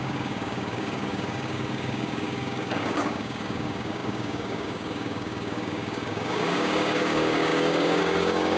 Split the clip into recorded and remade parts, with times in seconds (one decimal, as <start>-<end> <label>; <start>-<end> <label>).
0.0-8.6 remade